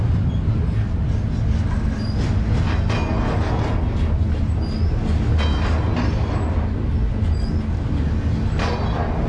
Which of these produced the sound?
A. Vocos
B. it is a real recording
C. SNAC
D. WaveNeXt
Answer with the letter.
B